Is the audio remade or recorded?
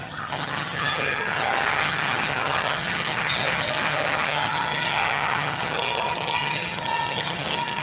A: remade